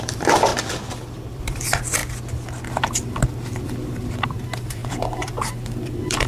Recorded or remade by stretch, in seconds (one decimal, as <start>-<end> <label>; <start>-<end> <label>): 0.0-2.0 remade; 2.0-2.7 recorded; 2.7-6.3 remade